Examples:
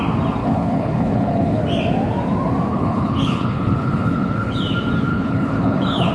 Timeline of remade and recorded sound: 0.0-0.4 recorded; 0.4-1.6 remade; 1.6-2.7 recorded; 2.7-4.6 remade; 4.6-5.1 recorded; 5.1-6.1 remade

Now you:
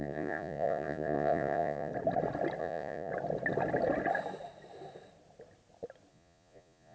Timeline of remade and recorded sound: 0.0-1.9 remade; 1.9-2.6 recorded; 2.6-3.1 remade; 3.1-6.1 recorded; 6.1-6.9 remade

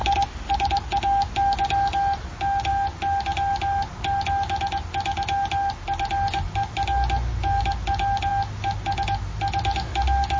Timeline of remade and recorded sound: 0.0-10.4 recorded

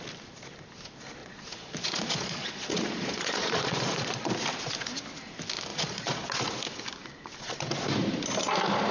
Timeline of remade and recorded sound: 0.0-1.2 recorded; 1.2-4.3 remade; 4.3-5.7 recorded; 5.7-6.4 remade; 6.4-8.9 recorded

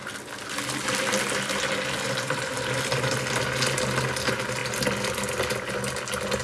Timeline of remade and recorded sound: 0.0-6.4 recorded

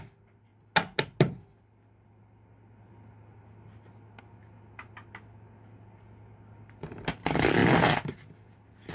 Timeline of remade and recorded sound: 0.0-8.9 recorded

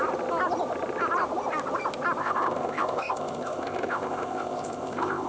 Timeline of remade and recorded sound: 0.0-2.2 recorded; 2.2-5.3 remade